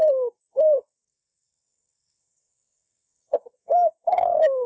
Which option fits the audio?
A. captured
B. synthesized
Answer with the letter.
B